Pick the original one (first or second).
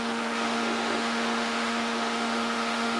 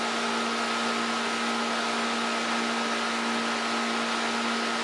second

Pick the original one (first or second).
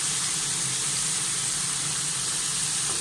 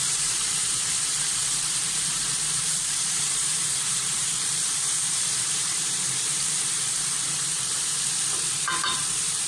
first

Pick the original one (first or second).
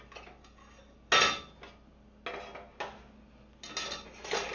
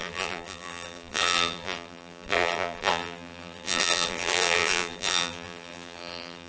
first